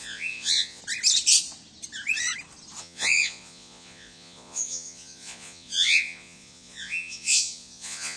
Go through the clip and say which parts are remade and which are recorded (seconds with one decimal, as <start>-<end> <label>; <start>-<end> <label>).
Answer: 0.0-0.8 remade; 0.8-2.8 recorded; 2.8-8.2 remade